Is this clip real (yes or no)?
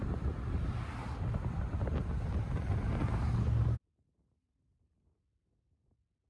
yes